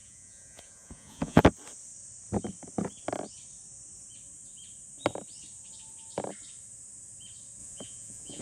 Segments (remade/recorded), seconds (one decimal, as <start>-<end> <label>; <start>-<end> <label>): 0.0-1.4 remade; 1.4-7.6 recorded; 7.6-8.4 remade